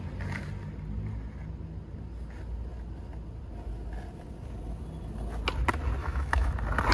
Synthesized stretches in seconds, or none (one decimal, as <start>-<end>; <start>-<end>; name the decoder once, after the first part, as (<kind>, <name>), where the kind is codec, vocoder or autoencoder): 6.0-6.5 (autoencoder, DAC-VAE)